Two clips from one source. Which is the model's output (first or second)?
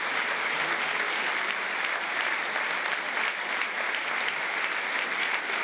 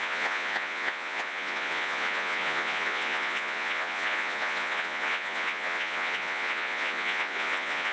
second